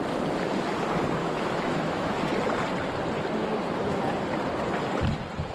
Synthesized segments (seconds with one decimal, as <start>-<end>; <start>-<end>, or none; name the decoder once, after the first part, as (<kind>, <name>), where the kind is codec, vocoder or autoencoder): 1.2-2.2 (autoencoder, DAC-VAE); 3.4-4.0